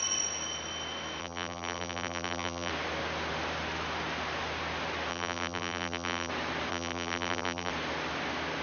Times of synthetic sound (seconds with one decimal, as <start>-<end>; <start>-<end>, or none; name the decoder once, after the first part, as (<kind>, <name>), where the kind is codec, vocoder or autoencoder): 1.2-2.7 (vocoder, BigVGAN v2); 5.1-6.3; 6.7-7.7